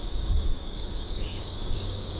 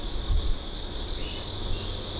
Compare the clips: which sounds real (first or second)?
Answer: second